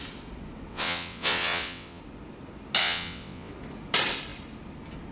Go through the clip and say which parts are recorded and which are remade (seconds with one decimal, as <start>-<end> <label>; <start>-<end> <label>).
0.0-0.7 recorded; 0.7-2.0 remade; 2.0-2.8 recorded; 2.8-3.5 remade; 3.5-5.1 recorded